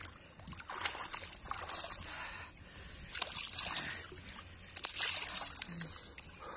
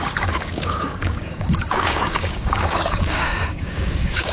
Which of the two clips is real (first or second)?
first